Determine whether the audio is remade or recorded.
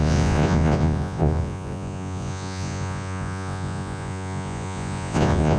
remade